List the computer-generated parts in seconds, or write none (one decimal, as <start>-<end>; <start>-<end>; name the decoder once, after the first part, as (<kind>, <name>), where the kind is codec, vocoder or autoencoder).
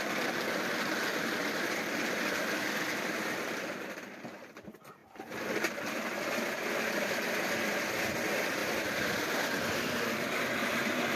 8.6-11.2 (vocoder, BigVGAN v2)